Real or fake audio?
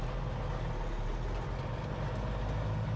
real